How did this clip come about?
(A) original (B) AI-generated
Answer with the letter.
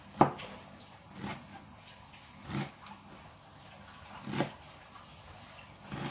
A